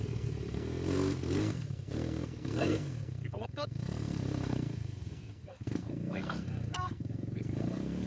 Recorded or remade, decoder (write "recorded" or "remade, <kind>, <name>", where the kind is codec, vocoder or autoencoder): remade, codec, SNAC